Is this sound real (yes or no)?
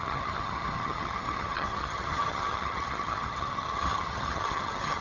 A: no